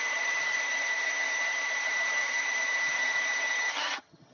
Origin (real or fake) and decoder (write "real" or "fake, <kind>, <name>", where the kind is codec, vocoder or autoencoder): fake, vocoder, HiFi-GAN